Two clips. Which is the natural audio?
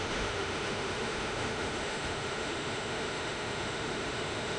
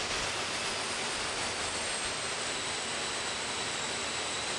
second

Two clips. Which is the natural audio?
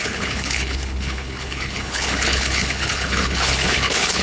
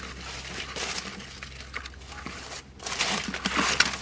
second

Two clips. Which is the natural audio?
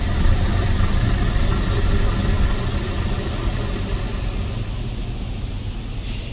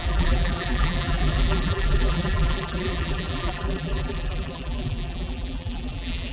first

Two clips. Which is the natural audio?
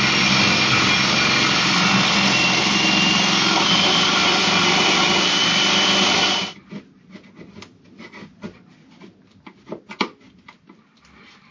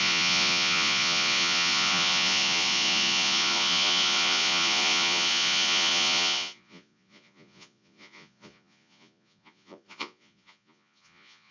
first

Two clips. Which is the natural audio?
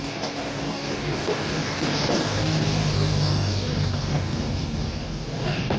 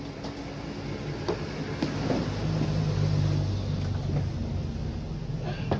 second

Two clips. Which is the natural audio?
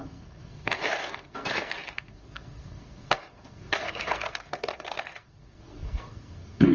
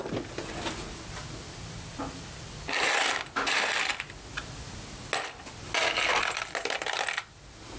second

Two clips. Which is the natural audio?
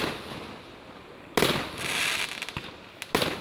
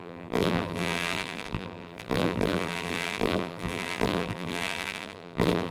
first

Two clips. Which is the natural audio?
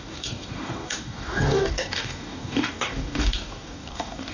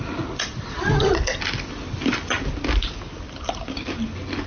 second